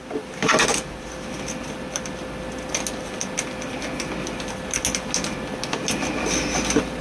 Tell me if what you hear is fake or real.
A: real